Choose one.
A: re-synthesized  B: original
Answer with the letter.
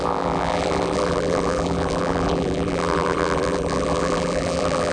A